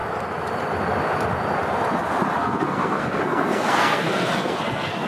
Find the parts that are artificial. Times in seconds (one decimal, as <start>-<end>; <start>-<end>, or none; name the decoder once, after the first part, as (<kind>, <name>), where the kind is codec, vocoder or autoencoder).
2.4-5.1 (codec, SNAC)